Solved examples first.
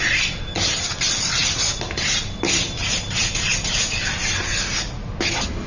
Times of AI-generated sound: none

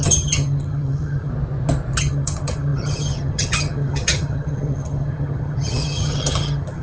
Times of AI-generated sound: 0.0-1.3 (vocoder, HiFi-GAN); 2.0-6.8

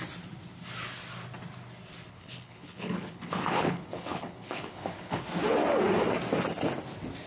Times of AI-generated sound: 2.1-5.2 (codec, HILCodec)

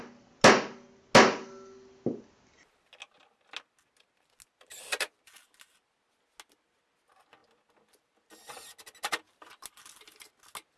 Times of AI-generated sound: none

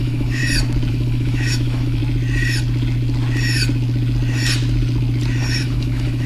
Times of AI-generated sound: 0.0-0.4 (autoencoder, DAC-VAE); 0.9-2.0; 5.6-6.3

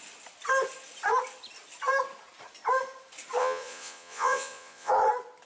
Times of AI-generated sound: 3.4-4.9 (vocoder, Vocos)